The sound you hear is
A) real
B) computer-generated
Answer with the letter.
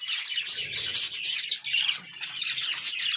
A